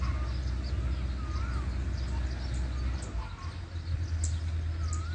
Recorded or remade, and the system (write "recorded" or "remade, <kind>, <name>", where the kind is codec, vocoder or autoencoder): recorded